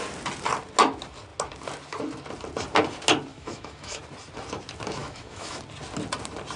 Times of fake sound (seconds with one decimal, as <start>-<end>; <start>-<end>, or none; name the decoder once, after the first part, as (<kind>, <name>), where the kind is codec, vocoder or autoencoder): 3.3-4.0 (autoencoder, DAC-VAE); 5.0-5.6